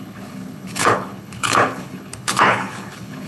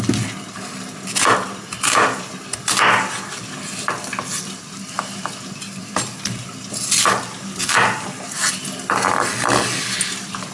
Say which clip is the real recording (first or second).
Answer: second